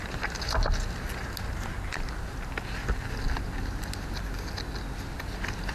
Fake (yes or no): no